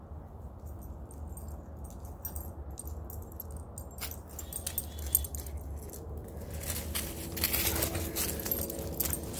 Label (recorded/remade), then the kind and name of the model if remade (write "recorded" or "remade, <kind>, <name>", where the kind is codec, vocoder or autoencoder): recorded